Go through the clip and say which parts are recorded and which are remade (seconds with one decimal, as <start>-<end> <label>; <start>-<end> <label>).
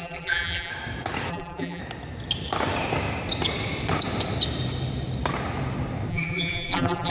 0.0-0.7 remade; 0.7-1.3 recorded; 1.3-1.8 remade; 1.8-6.1 recorded; 6.1-7.1 remade